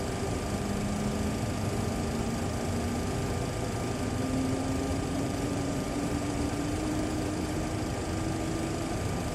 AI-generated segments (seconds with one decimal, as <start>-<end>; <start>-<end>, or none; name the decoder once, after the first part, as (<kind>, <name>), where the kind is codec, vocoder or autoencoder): 4.9-7.6 (vocoder, BigVGAN v2)